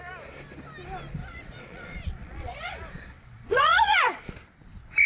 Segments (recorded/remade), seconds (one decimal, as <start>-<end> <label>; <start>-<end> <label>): 0.0-1.2 recorded; 1.2-4.3 remade; 4.3-5.1 recorded